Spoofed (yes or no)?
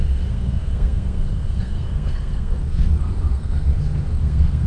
yes